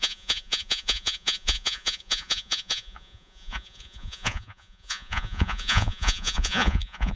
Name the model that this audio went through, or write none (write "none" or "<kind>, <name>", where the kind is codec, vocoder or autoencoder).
vocoder, Vocos